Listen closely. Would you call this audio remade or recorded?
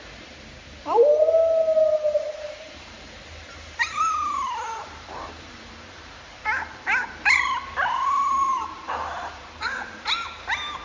remade